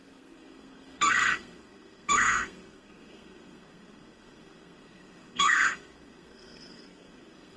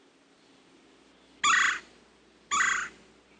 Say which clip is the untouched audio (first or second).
second